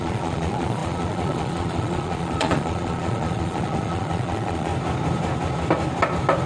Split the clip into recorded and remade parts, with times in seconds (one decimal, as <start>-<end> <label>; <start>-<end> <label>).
0.0-4.7 remade; 4.7-6.5 recorded